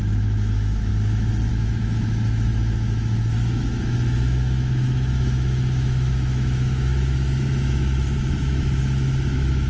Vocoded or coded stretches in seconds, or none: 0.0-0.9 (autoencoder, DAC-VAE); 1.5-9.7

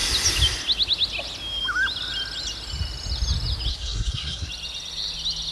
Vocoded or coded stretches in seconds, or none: 3.7-4.5 (codec, SNAC)